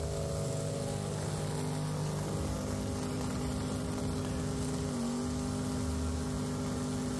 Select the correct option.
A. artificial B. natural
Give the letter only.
B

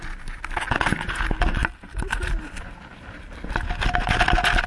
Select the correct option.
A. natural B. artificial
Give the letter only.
A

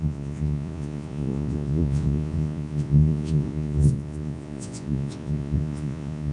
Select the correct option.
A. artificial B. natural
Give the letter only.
A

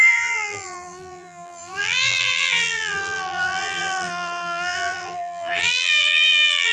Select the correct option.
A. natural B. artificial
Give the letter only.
B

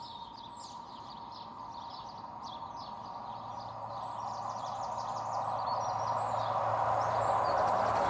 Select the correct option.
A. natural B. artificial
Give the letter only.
A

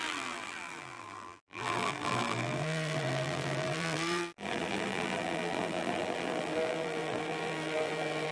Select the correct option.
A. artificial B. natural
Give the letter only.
A